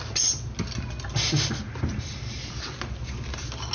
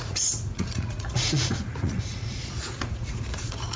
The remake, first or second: second